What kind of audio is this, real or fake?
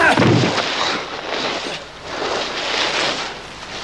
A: real